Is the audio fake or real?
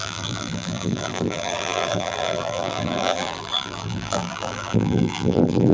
fake